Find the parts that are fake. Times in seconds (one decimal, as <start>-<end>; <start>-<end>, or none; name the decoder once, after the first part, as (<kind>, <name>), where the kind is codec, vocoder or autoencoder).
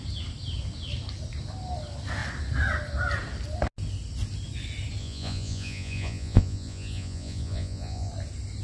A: 5.0-8.1 (vocoder, Vocos)